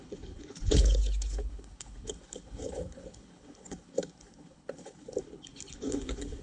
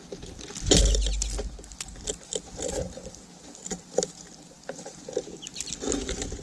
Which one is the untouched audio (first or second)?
second